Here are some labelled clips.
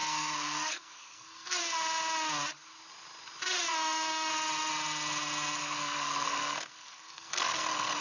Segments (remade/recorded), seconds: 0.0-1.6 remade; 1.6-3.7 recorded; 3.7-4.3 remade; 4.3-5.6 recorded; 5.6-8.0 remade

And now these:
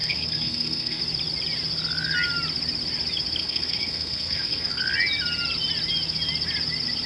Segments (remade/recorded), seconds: 0.0-1.0 remade; 1.0-3.4 recorded; 3.4-4.8 remade; 4.8-7.1 recorded

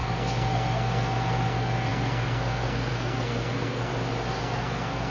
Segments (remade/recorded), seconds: 0.0-3.9 remade; 3.9-4.4 recorded; 4.4-5.1 remade

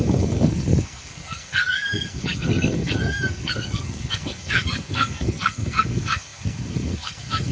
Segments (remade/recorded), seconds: 0.0-7.5 remade